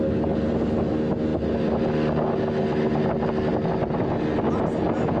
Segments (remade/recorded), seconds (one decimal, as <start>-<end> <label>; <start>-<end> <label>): 0.0-5.2 recorded